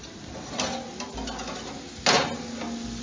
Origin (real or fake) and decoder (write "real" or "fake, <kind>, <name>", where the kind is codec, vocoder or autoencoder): real